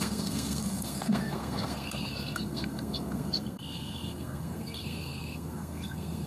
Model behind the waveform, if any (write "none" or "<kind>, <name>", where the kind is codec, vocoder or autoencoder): codec, SNAC